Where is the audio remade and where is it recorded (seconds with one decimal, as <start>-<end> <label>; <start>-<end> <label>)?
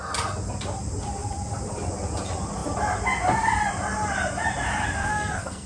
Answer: 0.0-5.0 recorded; 5.0-5.7 remade